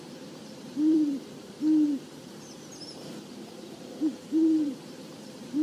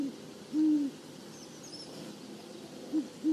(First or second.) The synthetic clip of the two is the first